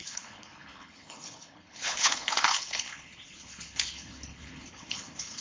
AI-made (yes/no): yes